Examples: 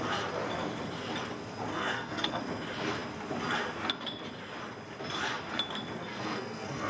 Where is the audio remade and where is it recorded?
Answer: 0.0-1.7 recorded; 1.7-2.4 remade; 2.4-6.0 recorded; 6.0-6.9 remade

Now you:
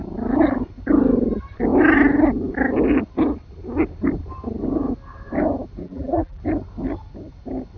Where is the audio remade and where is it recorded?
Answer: 0.0-5.8 recorded; 5.8-6.4 remade; 6.4-7.8 recorded

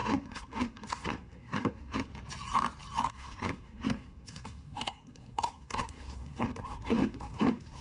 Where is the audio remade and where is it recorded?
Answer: 0.0-2.1 remade; 2.1-3.1 recorded; 3.1-7.8 remade

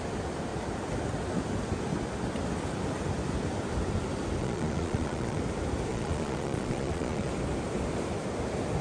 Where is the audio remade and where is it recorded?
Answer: 0.0-4.4 recorded; 4.4-5.4 remade; 5.4-5.9 recorded; 5.9-7.3 remade; 7.3-8.8 recorded

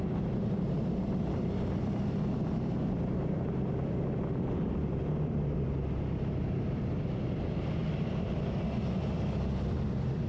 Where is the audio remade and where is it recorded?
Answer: 0.0-10.3 remade

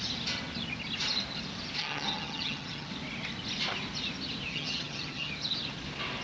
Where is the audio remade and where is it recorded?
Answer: 0.0-1.8 recorded; 1.8-2.9 remade; 2.9-4.5 recorded; 4.5-5.3 remade; 5.3-6.2 recorded

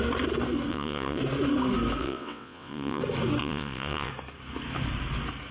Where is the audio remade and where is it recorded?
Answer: 0.0-0.7 recorded; 0.7-1.2 remade; 1.2-2.0 recorded; 2.0-3.0 remade; 3.0-3.4 recorded; 3.4-4.1 remade; 4.1-5.5 recorded